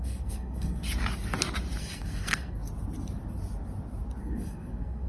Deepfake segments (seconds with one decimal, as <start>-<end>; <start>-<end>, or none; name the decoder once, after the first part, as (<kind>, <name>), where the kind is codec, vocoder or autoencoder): 0.0-0.8 (codec, SNAC); 1.8-2.6; 4.2-5.1